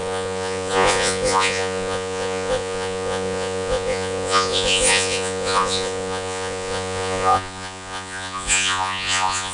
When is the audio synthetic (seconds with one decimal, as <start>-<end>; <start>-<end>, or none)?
0.0-9.5